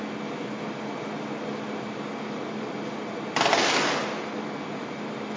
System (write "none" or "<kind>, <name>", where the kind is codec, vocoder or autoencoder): none